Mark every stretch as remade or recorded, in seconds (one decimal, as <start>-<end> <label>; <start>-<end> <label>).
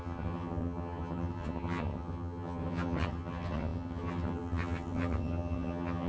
0.0-6.1 remade